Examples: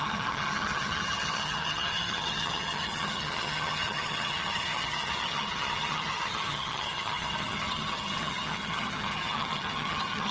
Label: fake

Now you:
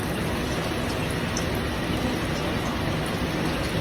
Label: real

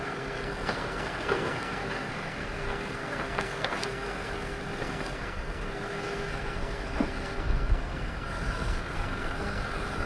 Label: fake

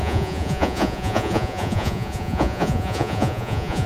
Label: fake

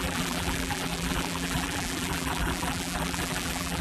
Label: fake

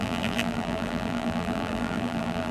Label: fake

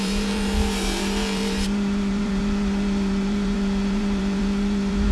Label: fake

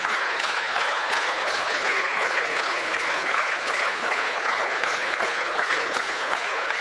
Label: fake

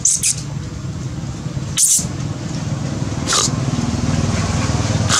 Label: real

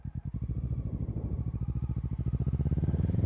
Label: fake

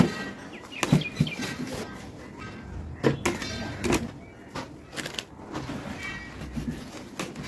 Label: real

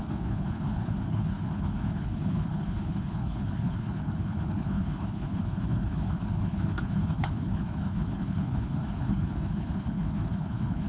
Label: fake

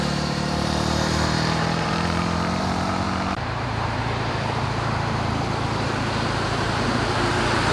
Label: fake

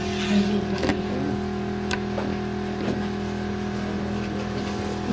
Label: real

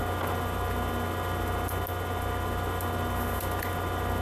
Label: real